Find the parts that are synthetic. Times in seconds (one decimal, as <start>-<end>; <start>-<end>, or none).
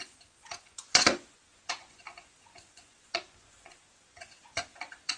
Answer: 0.0-5.2